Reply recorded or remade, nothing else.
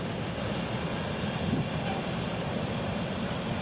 recorded